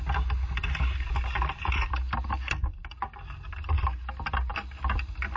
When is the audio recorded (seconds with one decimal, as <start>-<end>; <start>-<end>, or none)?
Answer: 0.0-5.4